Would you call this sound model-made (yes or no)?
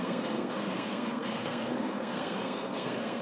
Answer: yes